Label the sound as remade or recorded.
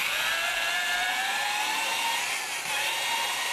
recorded